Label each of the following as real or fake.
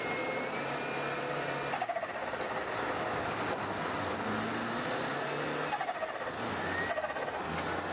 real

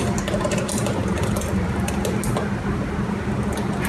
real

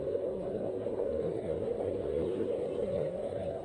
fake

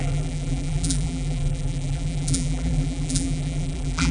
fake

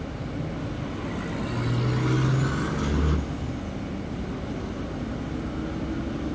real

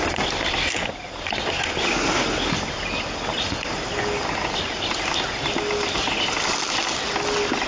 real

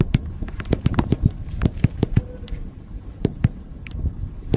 fake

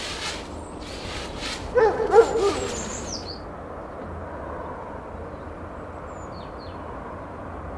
real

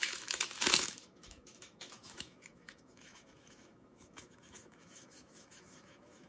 fake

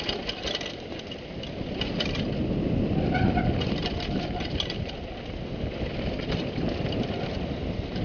real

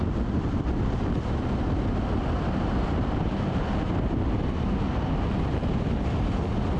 real